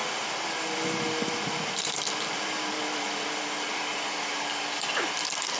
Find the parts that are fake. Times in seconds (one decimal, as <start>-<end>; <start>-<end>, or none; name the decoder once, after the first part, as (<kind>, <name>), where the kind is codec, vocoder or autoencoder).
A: 0.0-3.4 (vocoder, BigVGAN v2)